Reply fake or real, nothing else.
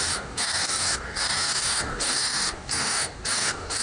fake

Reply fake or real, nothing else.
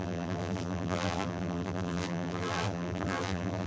fake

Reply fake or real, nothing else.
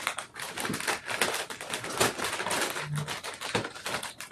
real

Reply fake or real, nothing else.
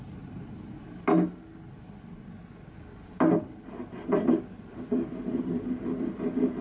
real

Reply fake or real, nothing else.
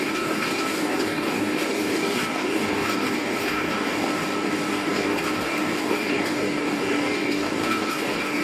fake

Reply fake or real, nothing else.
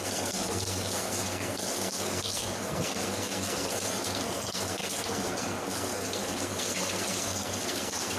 fake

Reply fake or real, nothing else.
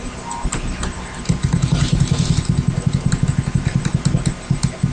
real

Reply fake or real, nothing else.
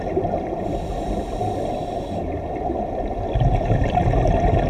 real